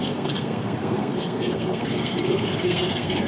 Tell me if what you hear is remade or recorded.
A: remade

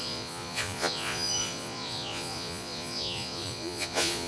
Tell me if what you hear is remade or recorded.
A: remade